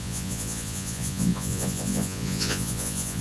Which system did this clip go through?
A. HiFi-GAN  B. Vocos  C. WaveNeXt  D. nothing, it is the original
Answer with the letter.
B